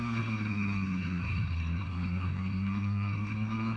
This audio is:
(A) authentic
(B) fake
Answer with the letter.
B